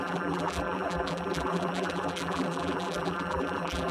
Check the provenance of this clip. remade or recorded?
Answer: remade